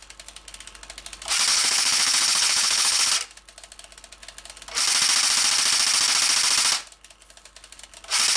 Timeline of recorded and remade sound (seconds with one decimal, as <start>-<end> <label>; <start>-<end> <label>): 0.0-1.5 recorded; 1.5-3.1 remade; 3.1-8.4 recorded